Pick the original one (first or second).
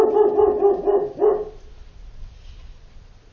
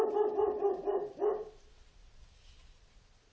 first